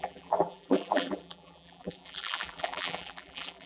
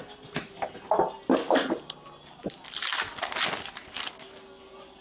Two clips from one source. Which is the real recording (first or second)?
second